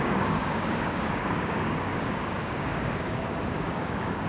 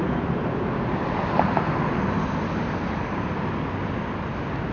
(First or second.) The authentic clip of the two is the second